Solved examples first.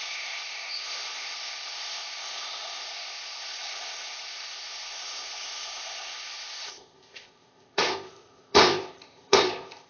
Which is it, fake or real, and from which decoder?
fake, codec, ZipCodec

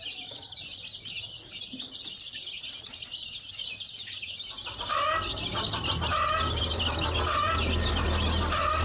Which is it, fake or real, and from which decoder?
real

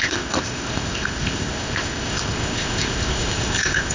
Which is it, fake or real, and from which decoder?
fake, codec, ZipCodec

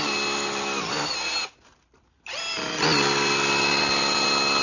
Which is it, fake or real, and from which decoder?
real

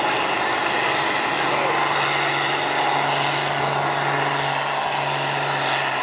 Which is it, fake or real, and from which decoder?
real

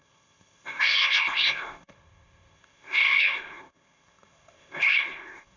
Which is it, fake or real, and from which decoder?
fake, codec, ZipCodec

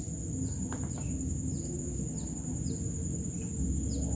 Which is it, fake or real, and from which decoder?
real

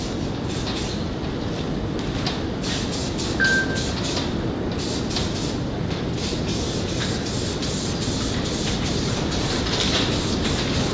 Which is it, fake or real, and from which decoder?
real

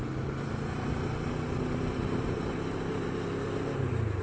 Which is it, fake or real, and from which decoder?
real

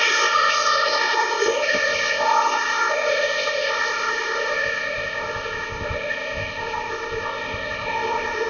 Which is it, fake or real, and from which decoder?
fake, codec, ZipCodec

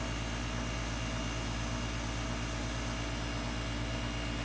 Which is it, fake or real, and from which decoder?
real